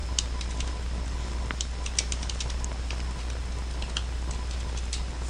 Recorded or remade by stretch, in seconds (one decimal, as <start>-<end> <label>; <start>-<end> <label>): 0.0-5.3 recorded